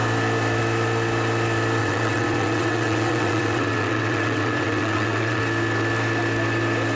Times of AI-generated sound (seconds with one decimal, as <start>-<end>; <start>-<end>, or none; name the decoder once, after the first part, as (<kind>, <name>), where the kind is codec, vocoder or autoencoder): 1.8-5.4 (vocoder, WaveNeXt)